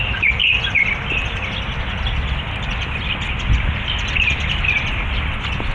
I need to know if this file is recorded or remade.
recorded